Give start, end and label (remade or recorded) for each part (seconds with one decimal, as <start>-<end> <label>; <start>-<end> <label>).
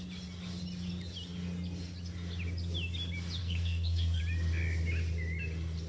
0.0-3.4 recorded; 3.4-4.2 remade; 4.2-5.9 recorded